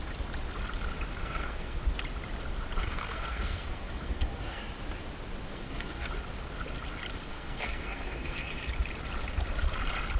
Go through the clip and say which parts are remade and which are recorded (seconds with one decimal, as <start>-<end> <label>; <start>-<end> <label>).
0.0-1.2 recorded; 1.2-1.8 remade; 1.8-2.8 recorded; 2.8-4.6 remade; 4.6-5.5 recorded; 5.5-6.1 remade; 6.1-7.3 recorded; 7.3-8.5 remade; 8.5-10.2 recorded